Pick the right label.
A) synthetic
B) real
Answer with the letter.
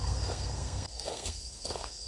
A